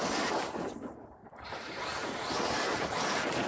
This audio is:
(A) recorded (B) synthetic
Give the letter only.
A